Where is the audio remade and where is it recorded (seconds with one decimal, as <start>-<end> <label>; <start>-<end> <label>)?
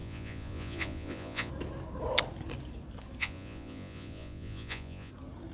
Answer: 0.0-1.5 remade; 1.5-3.2 recorded; 3.2-5.1 remade; 5.1-5.5 recorded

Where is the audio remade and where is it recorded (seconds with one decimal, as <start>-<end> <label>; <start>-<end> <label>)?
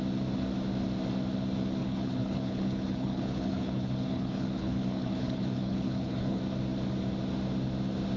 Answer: 0.0-1.8 recorded; 1.8-6.4 remade; 6.4-8.2 recorded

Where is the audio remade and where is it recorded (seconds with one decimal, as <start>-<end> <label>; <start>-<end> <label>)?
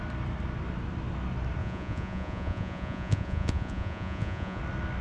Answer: 0.0-1.6 recorded; 1.6-4.6 remade; 4.6-5.0 recorded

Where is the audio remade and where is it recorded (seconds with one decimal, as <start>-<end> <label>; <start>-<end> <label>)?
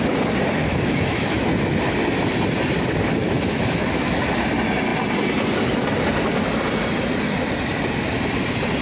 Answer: 0.0-0.6 recorded; 0.6-1.4 remade; 1.4-3.2 recorded; 3.2-4.2 remade; 4.2-8.8 recorded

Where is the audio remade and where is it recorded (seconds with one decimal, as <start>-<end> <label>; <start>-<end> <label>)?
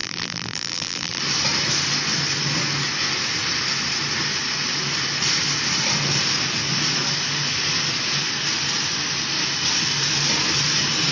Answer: 0.0-1.2 remade; 1.2-11.1 recorded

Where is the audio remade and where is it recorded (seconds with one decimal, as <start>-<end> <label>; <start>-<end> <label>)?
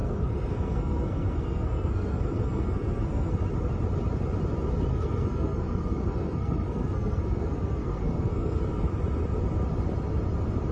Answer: 0.0-3.4 remade; 3.4-4.9 recorded; 4.9-8.6 remade; 8.6-10.7 recorded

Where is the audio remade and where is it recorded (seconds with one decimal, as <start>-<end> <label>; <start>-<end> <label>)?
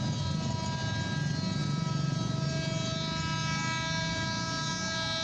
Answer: 0.0-5.2 recorded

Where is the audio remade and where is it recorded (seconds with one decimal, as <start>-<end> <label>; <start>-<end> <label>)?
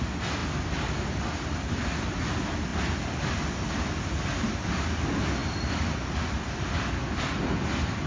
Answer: 0.0-8.1 recorded